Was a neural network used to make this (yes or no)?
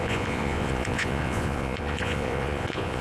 yes